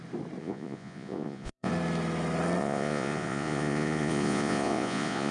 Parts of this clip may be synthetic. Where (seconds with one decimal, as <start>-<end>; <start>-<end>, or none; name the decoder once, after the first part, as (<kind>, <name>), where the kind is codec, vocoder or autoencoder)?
0.4-1.7 (vocoder, Vocos); 2.6-5.3

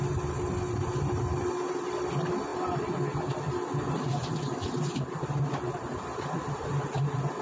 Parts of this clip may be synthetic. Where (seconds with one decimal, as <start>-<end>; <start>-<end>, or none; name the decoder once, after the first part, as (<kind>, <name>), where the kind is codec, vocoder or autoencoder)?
none

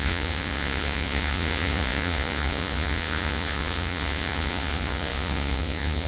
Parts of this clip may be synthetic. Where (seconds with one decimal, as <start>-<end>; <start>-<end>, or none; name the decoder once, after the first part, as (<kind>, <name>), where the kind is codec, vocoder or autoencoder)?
0.0-6.1 (vocoder, Vocos)

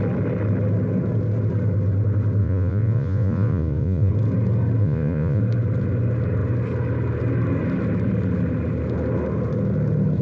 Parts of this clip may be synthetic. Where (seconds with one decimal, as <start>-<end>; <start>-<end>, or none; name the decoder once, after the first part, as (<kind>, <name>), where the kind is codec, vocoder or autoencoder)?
2.4-4.1 (vocoder, Vocos); 4.8-5.4